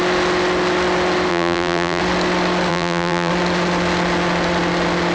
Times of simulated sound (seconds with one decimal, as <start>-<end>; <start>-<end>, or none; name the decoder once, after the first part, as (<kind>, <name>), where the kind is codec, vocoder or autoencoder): 1.3-2.0 (vocoder, BigVGAN v2); 2.7-3.3